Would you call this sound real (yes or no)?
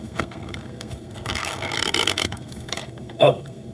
no